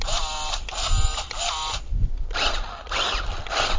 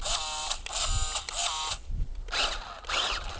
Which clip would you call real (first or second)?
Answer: second